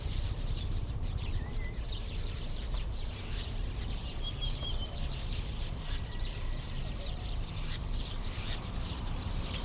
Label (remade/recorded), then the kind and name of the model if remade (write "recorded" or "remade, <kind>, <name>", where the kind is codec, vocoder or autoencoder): remade, vocoder, BigVGAN v2